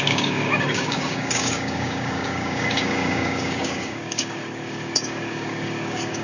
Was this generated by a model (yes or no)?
yes